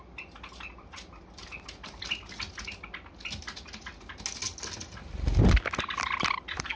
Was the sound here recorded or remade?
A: recorded